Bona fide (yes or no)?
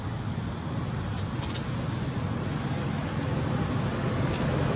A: yes